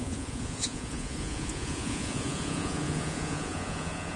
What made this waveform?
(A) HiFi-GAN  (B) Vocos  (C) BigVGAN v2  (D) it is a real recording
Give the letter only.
B